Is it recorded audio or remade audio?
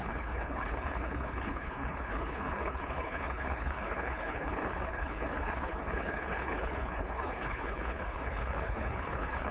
remade